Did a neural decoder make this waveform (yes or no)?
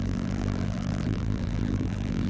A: yes